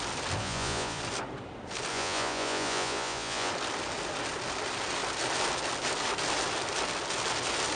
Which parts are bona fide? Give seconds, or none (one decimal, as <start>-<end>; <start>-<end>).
0.0-0.4; 1.0-1.9; 3.5-7.8